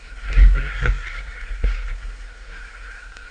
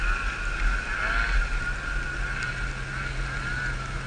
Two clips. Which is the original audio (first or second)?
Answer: second